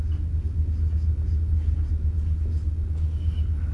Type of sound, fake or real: real